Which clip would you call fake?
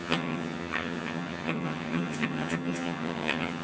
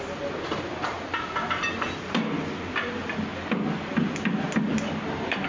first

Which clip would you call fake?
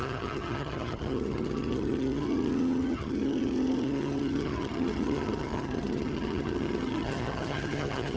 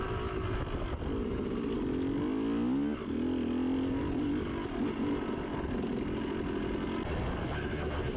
first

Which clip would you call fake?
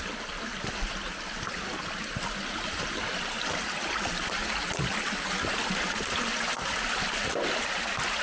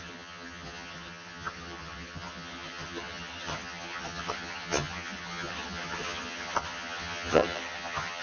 second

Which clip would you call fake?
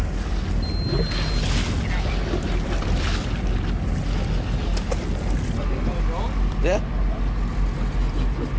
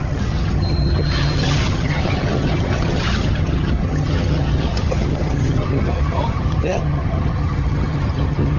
second